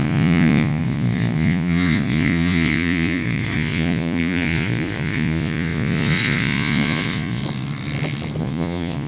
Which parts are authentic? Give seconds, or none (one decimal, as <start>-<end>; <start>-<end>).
7.4-8.4